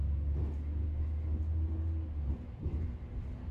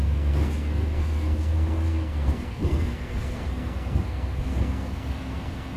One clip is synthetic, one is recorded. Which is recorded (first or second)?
first